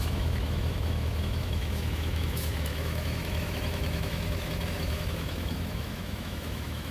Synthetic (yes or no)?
yes